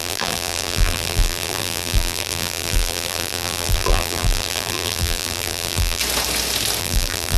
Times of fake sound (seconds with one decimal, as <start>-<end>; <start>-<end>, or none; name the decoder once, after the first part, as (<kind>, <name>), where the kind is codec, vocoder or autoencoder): 0.0-6.0 (vocoder, BigVGAN v2); 6.8-7.4